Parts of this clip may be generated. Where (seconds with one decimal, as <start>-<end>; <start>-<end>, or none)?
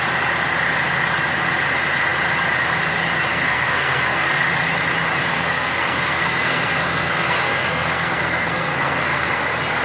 3.3-4.5; 5.3-9.4